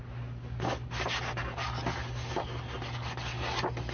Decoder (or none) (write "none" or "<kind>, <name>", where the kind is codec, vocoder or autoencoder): none